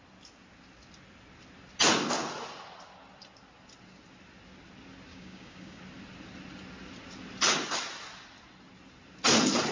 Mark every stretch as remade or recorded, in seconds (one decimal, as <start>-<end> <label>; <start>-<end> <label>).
0.0-5.1 recorded; 5.1-5.8 remade; 5.8-9.7 recorded